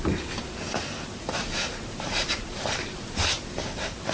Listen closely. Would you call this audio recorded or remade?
remade